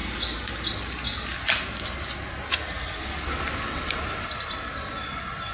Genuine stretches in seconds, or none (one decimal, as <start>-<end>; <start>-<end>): 0.0-2.5; 3.0-5.5